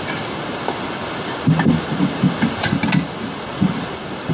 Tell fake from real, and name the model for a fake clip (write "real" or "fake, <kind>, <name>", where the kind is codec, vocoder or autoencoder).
real